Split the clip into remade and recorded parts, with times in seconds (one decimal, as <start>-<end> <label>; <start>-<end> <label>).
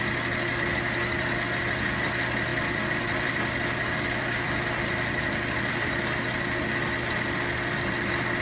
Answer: 0.0-2.5 recorded; 2.5-6.0 remade; 6.0-8.4 recorded